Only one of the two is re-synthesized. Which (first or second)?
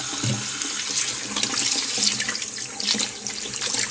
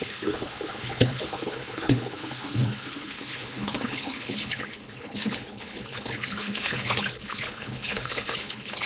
second